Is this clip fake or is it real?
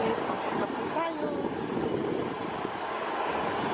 real